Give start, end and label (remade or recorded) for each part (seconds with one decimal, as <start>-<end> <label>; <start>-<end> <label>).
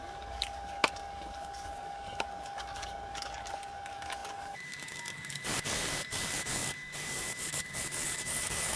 0.0-8.8 remade